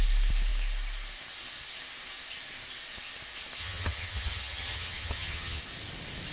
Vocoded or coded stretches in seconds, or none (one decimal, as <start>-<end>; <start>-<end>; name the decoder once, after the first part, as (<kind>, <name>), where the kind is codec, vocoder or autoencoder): 3.6-5.6 (vocoder, HiFi-GAN)